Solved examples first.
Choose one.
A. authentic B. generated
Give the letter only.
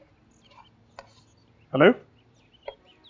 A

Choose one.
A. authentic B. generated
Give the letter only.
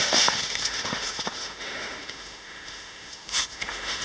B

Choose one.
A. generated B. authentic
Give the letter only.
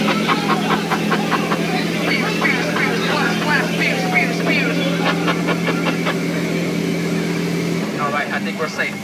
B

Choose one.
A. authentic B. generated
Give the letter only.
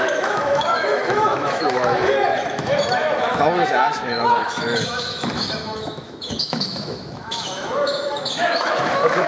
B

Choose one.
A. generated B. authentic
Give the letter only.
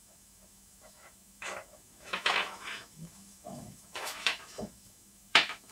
A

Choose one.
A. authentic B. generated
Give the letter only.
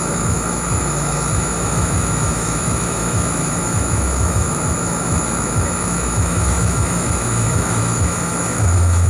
B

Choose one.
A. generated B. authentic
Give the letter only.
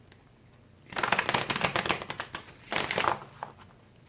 B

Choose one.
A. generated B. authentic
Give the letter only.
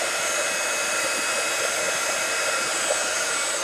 B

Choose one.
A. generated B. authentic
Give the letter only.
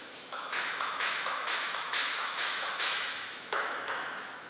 A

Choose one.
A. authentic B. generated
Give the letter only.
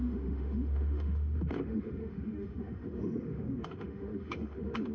B